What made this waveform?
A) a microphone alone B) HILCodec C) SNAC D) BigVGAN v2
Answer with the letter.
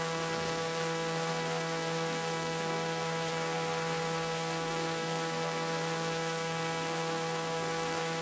C